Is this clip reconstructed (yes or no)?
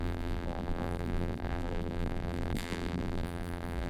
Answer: yes